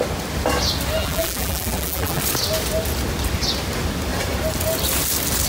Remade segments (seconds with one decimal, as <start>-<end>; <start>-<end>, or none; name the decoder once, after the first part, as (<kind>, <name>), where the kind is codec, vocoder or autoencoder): 1.0-2.2 (vocoder, BigVGAN v2)